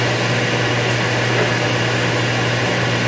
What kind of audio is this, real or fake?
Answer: real